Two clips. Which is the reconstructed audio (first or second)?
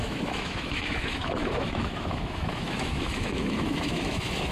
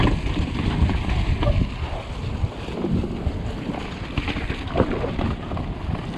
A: first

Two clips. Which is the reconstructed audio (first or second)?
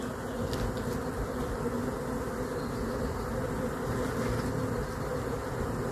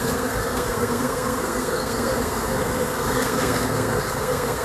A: second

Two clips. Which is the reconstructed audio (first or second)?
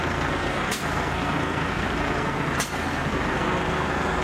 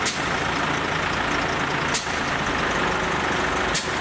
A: first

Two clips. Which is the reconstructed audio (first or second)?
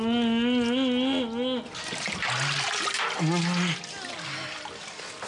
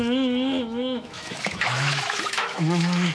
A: second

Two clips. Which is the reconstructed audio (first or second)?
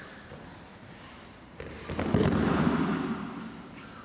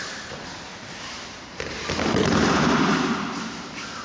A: second